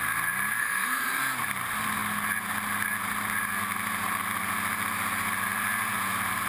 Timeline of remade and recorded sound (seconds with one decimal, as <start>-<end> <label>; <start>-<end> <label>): 0.0-0.6 recorded; 0.6-1.2 remade; 1.2-6.5 recorded